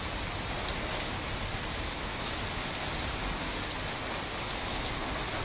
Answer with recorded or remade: recorded